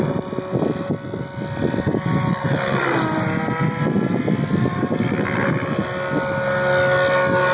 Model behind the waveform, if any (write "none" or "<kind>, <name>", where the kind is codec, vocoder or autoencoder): none